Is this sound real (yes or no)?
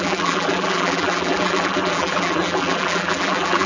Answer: no